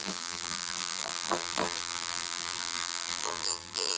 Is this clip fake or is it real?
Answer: fake